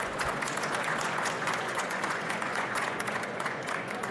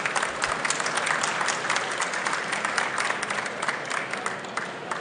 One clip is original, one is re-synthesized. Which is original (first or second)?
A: second